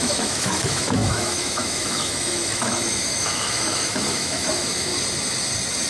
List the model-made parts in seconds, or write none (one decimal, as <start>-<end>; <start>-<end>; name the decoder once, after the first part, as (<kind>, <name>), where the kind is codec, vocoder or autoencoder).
0.0-4.9 (autoencoder, DAC-VAE)